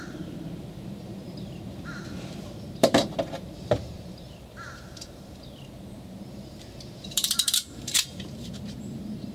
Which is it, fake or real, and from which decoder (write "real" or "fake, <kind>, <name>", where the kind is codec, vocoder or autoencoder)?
fake, vocoder, BigVGAN v2